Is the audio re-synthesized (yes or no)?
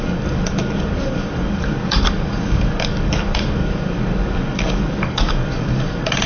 yes